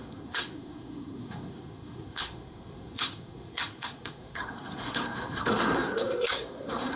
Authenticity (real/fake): fake